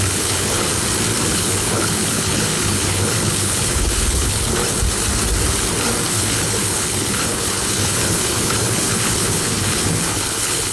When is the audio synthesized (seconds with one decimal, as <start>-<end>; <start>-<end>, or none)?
0.0-0.7; 1.3-4.6; 6.1-10.7